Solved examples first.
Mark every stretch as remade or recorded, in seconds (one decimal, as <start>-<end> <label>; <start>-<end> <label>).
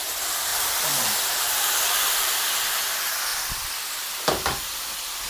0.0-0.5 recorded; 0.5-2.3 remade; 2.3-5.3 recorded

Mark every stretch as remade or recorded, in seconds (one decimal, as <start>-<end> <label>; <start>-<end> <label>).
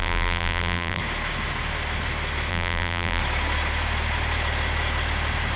0.0-1.0 remade; 1.0-2.5 recorded; 2.5-3.2 remade; 3.2-5.6 recorded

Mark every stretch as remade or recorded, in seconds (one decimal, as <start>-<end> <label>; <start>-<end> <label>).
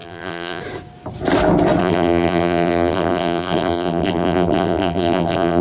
0.0-0.6 remade; 0.6-1.8 recorded; 1.8-5.6 remade